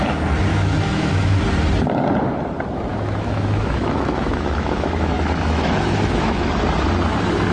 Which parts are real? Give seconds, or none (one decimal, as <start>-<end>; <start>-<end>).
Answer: 0.0-0.5; 1.4-2.9; 6.5-7.5